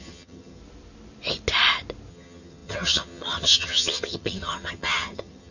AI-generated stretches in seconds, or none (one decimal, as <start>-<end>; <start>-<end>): 0.0-0.6; 2.1-5.5